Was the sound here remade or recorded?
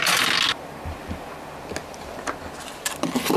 recorded